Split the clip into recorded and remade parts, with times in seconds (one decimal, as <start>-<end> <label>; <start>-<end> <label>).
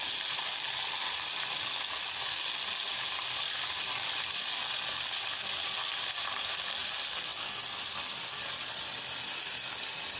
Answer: 0.0-10.2 recorded